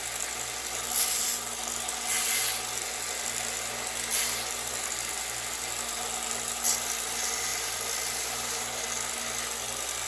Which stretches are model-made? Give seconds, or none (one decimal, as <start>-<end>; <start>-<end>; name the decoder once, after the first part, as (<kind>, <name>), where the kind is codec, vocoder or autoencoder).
7.5-8.8 (vocoder, BigVGAN v2)